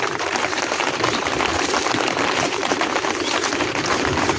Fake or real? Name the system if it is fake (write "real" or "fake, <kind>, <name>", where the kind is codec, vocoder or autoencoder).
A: fake, vocoder, BigVGAN v2